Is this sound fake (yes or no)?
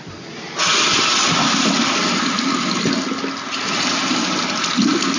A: no